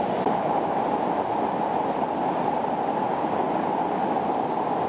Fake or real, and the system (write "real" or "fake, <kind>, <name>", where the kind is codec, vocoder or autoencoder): real